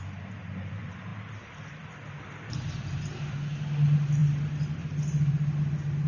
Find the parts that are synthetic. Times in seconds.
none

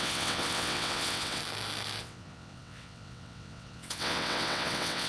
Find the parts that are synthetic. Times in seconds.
0.0-1.4; 2.0-5.1